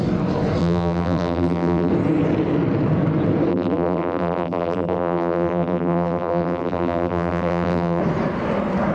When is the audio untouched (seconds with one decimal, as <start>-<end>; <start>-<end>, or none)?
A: 0.0-0.6; 1.9-3.5; 8.0-8.9